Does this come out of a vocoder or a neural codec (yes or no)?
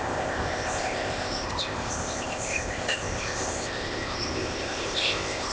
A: yes